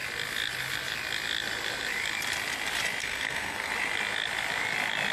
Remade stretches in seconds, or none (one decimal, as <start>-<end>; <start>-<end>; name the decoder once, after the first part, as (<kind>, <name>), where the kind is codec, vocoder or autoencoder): 3.0-3.7 (codec, SNAC)

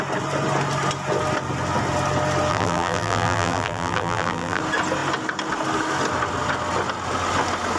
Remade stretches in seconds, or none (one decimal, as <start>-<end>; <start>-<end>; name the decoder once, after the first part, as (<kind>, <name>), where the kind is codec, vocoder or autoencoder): 2.5-4.6 (vocoder, BigVGAN v2)

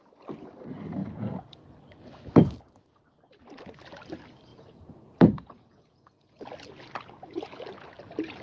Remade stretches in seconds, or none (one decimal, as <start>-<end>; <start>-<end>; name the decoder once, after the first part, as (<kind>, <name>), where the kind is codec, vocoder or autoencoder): 4.5-6.4 (vocoder, Vocos)

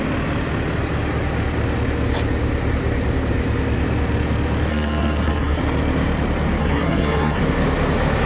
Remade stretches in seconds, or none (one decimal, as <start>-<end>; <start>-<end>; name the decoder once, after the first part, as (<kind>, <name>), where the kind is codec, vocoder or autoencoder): 4.7-5.6 (codec, SNAC); 6.6-7.4

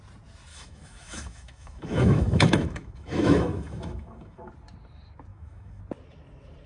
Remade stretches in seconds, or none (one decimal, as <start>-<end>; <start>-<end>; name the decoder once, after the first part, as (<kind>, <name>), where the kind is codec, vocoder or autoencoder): 0.5-4.5 (autoencoder, DAC-VAE); 5.3-5.8

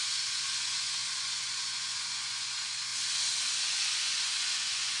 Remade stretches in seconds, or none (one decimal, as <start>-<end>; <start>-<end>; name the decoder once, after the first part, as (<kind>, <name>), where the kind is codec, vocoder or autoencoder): 0.0-2.9 (vocoder, Vocos); 3.6-5.0

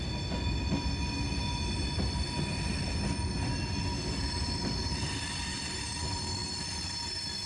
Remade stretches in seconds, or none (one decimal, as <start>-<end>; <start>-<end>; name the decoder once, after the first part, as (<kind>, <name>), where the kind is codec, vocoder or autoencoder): none